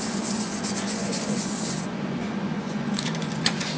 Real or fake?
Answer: fake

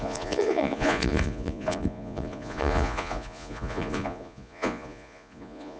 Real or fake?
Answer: fake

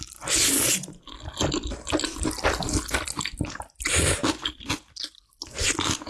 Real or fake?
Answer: real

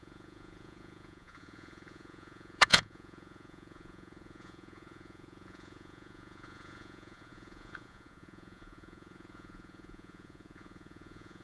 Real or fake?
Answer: fake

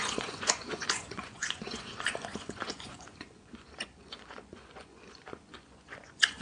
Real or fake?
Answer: fake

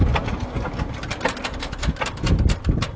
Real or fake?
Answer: real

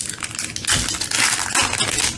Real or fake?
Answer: real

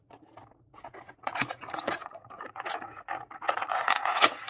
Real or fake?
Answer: fake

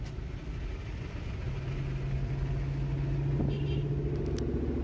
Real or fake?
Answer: real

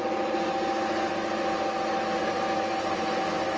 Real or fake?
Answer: real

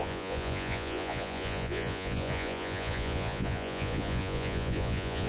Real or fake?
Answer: fake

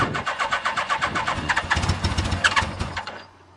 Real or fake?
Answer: fake